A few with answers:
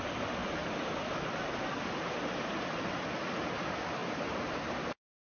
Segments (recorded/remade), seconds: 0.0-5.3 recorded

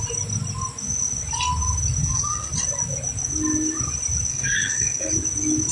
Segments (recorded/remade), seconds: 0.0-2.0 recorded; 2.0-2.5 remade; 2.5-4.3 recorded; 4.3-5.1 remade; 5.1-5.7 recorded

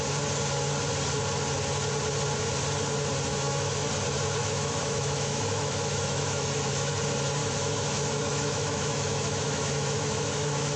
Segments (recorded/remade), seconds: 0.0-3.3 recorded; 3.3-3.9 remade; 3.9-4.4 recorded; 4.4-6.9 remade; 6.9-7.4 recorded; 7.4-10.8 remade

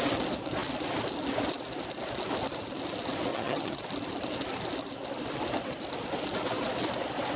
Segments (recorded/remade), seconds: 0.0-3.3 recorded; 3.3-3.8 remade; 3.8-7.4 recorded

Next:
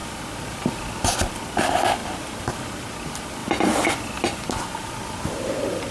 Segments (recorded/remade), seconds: 0.0-2.0 recorded; 2.0-2.5 remade; 2.5-3.4 recorded; 3.4-4.6 remade; 4.6-5.9 recorded